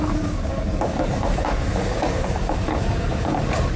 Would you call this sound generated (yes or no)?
yes